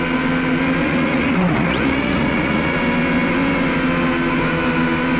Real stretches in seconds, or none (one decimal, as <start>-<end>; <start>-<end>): 0.0-0.8; 2.8-5.2